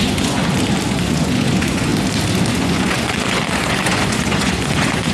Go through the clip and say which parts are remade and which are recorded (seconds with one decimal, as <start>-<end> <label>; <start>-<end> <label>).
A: 0.0-0.4 remade; 0.4-0.9 recorded; 0.9-1.9 remade; 1.9-2.5 recorded; 2.5-5.1 remade